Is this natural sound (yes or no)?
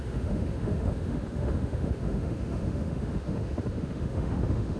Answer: no